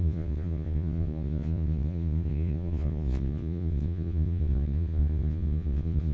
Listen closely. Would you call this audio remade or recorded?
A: remade